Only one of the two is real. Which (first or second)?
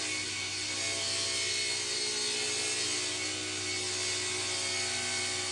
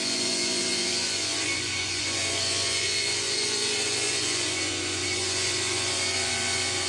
first